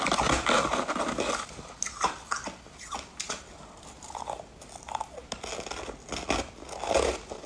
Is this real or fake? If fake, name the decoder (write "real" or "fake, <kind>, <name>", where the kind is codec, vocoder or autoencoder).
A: real